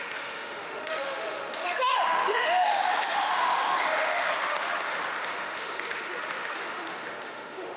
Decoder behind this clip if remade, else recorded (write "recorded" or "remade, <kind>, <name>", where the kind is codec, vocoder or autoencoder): remade, autoencoder, DAC-VAE